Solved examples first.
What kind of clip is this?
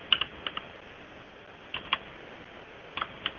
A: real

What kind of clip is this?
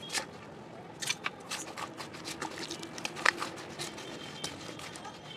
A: real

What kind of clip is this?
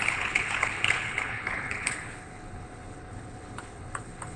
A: fake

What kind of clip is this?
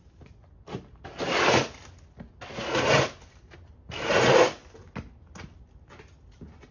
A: real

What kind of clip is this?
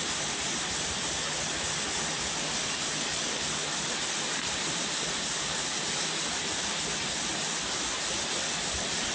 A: fake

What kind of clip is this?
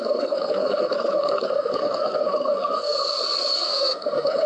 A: fake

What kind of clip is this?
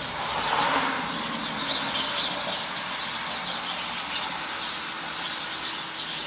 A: real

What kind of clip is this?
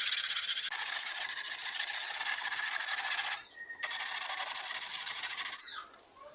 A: real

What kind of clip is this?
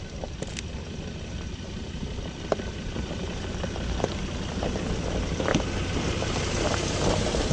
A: real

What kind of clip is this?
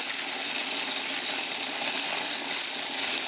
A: real